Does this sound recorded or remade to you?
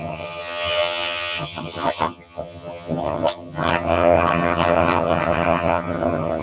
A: remade